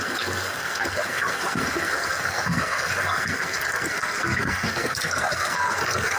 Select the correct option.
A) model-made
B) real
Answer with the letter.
A